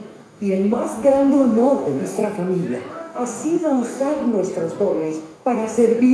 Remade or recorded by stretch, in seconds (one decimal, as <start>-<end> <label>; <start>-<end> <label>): 0.0-2.2 remade; 2.2-2.9 recorded; 2.9-4.2 remade; 4.2-4.8 recorded; 4.8-6.1 remade